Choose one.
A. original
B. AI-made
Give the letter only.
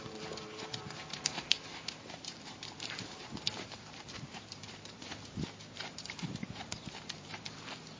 B